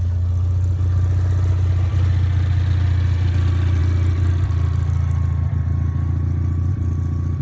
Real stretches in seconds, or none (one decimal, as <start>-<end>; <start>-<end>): 0.0-7.4